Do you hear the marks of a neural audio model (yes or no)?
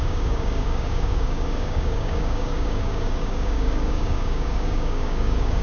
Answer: yes